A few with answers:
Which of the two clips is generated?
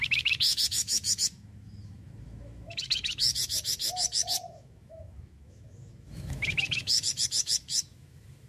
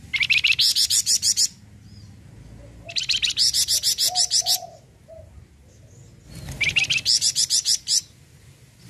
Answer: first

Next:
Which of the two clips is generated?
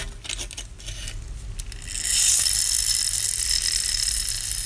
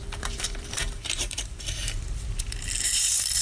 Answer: second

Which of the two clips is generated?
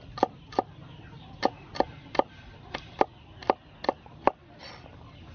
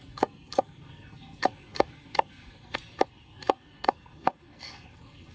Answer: second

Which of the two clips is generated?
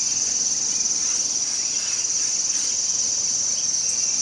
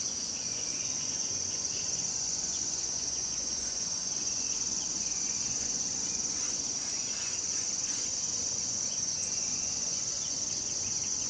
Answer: second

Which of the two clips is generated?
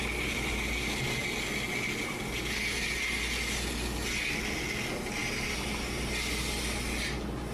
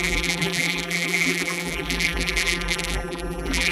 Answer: second